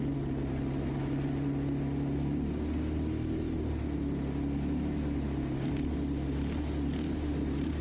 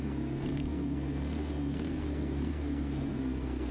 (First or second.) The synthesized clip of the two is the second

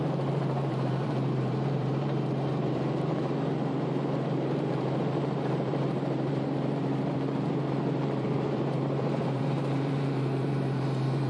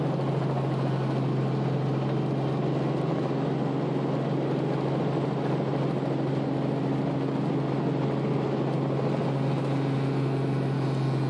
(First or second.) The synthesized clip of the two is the first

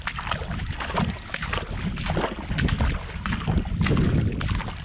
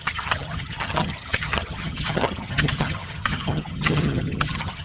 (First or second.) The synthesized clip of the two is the second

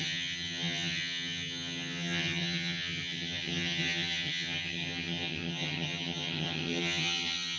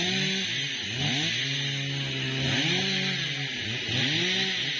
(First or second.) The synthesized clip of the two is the first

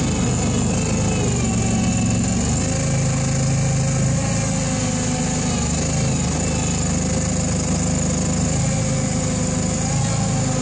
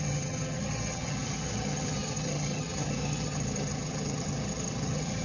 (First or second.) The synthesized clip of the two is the second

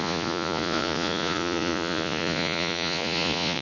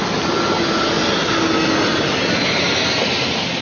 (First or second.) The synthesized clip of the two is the first